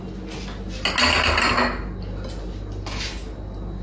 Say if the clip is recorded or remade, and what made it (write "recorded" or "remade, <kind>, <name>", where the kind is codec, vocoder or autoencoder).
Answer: recorded